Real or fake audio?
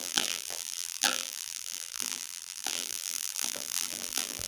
fake